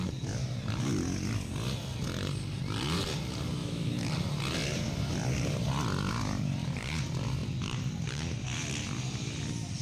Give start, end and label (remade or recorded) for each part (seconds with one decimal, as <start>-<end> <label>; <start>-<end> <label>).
0.0-3.6 recorded; 3.6-4.1 remade; 4.1-9.8 recorded